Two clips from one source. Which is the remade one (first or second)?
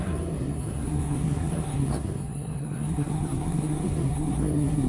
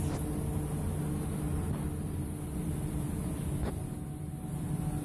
first